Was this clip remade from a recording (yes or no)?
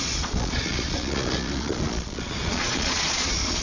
yes